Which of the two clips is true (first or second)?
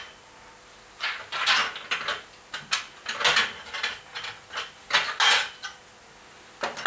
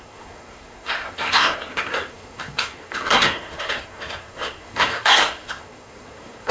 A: first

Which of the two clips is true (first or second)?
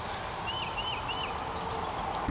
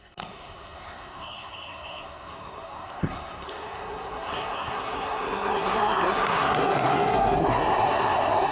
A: first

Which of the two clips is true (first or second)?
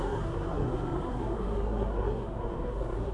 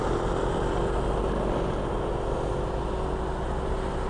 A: second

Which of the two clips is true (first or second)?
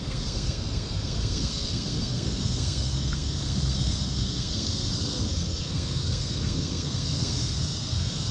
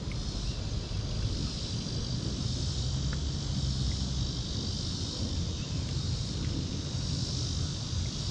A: second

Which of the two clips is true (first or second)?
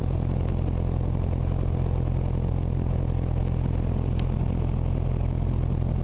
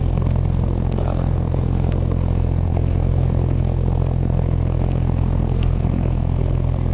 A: first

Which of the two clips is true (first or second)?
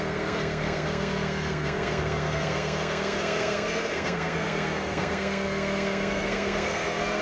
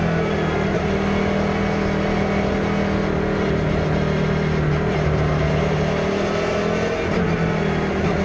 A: second